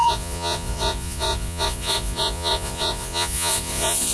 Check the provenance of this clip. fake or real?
fake